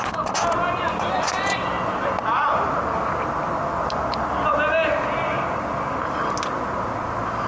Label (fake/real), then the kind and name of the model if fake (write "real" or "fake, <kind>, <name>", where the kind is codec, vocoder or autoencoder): real